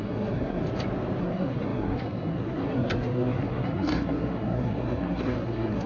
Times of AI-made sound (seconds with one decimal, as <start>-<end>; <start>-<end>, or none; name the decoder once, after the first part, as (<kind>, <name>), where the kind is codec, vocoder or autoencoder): 0.0-0.6 (codec, SNAC); 1.2-5.9